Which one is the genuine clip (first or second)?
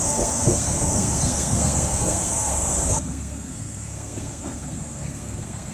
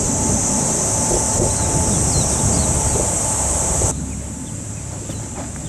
second